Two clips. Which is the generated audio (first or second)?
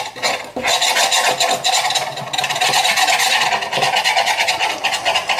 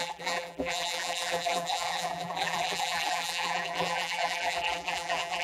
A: second